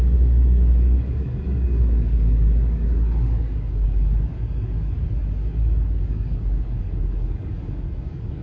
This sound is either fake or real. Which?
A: fake